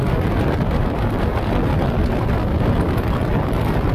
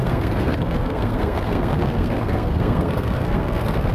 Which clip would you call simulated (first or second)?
second